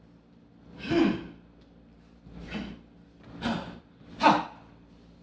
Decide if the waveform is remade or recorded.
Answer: recorded